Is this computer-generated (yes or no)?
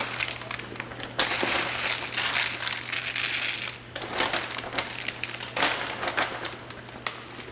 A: no